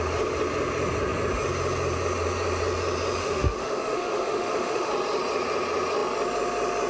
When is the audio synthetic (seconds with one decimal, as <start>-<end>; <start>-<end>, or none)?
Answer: 3.2-4.9